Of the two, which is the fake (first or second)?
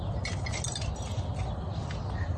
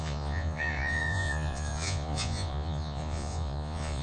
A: second